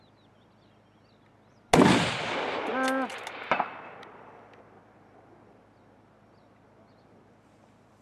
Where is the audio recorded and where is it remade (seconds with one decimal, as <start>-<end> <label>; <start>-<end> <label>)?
0.0-8.0 recorded